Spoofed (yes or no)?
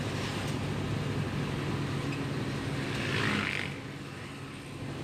no